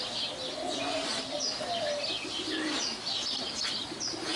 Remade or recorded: recorded